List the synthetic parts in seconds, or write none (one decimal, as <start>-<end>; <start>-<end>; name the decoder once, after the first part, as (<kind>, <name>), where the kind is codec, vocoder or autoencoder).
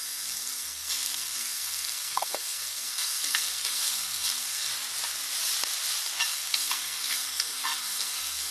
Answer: 0.0-4.7 (codec, SNAC); 6.3-8.5